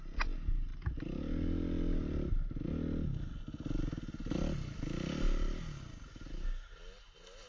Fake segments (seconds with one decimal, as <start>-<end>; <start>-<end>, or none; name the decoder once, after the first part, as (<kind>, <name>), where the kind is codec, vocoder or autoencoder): none